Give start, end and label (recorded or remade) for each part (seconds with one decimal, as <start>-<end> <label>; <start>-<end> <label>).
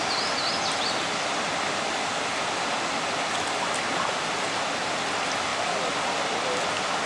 0.0-7.1 recorded